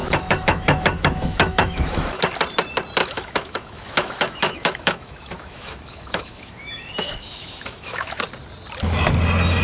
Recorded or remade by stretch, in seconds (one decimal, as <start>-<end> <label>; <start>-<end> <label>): 0.0-2.2 remade; 2.2-3.0 recorded; 3.0-8.2 remade; 8.2-9.6 recorded